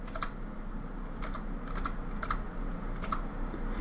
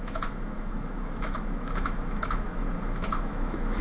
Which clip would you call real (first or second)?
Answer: first